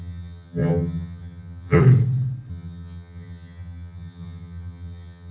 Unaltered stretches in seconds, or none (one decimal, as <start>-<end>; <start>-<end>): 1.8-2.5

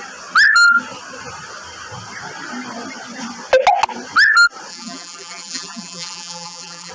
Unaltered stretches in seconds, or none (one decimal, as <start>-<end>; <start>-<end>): 0.0-4.7

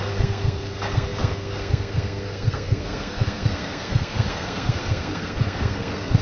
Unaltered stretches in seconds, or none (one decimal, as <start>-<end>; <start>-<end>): none